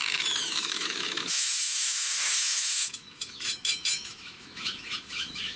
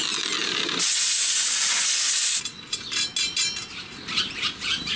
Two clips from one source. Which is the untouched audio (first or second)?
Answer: second